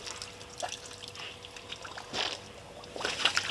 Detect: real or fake real